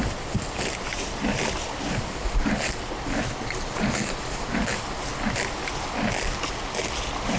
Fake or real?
real